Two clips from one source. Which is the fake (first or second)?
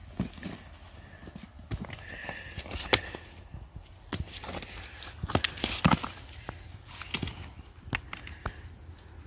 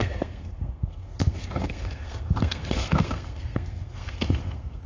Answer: second